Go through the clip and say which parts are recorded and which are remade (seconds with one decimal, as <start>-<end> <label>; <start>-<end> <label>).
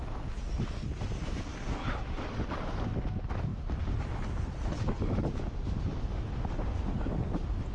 0.0-1.5 recorded; 1.5-2.3 remade; 2.3-3.5 recorded; 3.5-5.8 remade; 5.8-7.7 recorded